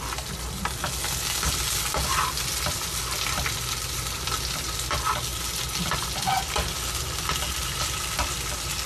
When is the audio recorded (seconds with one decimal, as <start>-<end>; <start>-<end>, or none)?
0.0-8.9